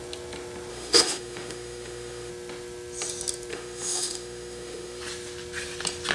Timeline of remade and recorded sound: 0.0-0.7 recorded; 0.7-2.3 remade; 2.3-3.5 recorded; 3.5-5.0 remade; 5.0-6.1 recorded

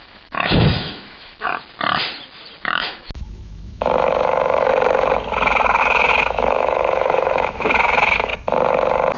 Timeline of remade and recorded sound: 0.0-1.5 remade; 1.5-2.6 recorded; 2.6-4.7 remade; 4.7-5.8 recorded; 5.8-8.3 remade; 8.3-9.2 recorded

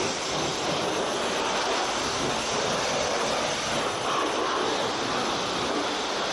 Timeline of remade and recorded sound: 0.0-6.3 recorded

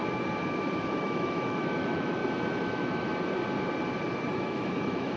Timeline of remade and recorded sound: 0.0-0.9 recorded; 0.9-2.2 remade; 2.2-2.7 recorded; 2.7-3.1 remade; 3.1-4.3 recorded; 4.3-5.2 remade

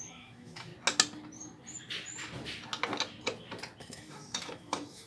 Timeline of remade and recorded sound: 0.0-0.7 remade; 0.7-3.8 recorded; 3.8-5.1 remade